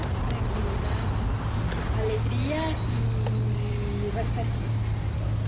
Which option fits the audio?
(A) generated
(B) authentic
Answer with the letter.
B